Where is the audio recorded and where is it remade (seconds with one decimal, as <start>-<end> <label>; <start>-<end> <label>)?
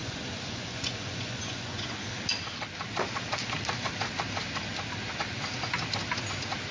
0.0-2.0 remade; 2.0-6.7 recorded